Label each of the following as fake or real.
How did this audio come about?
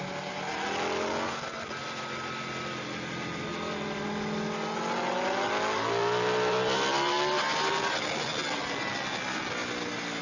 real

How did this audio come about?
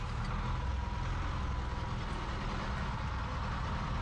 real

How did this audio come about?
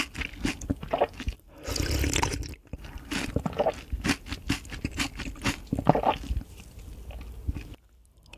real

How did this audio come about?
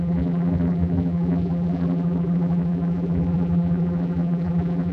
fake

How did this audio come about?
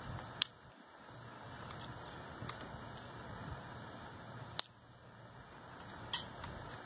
real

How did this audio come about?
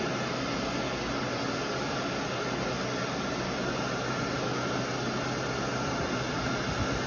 real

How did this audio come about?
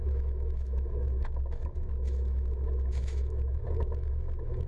fake